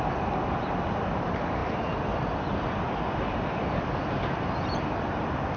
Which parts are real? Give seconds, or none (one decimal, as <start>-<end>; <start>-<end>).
0.0-5.6

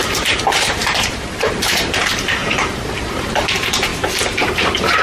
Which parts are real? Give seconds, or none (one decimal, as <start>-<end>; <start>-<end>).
3.9-4.5

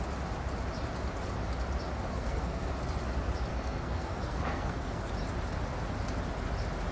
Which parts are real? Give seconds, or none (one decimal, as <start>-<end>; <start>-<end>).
0.0-2.1; 2.7-3.5; 5.1-6.9